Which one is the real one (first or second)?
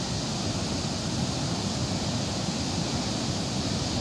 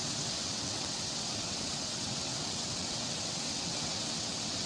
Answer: first